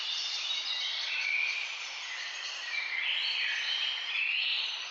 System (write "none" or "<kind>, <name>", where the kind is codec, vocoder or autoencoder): vocoder, BigVGAN v2